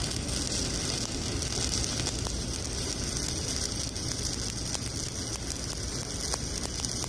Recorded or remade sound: recorded